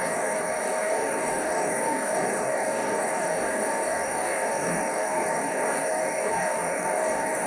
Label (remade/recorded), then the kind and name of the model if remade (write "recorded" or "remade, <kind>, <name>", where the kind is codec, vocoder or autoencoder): remade, codec, DAC